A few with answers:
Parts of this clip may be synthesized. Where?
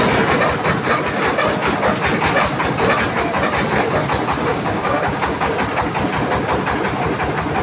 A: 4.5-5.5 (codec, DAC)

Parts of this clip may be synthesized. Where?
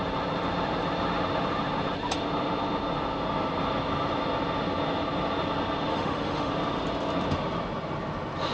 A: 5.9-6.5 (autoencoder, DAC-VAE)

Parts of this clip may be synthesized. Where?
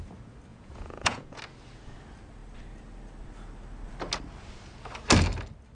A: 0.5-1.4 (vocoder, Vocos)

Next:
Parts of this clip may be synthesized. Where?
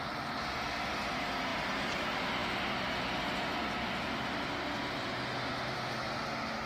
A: none